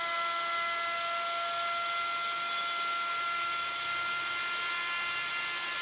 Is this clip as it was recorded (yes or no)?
yes